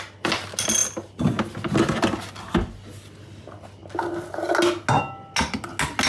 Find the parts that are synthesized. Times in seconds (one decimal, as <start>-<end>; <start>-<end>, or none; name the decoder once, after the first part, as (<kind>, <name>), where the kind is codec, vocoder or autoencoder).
none